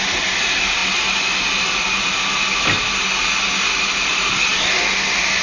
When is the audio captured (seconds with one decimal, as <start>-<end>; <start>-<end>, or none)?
0.0-5.4